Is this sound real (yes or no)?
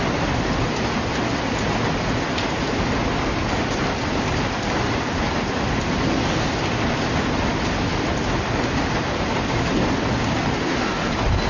yes